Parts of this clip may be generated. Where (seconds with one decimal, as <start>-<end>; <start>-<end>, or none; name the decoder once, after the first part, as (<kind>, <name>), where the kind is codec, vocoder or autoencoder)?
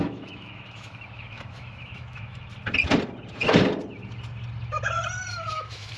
0.0-2.5 (autoencoder, DAC-VAE); 5.5-6.0